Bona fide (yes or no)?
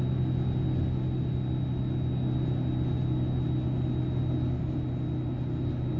yes